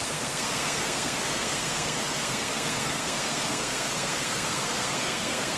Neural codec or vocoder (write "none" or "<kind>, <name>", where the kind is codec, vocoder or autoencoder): codec, SNAC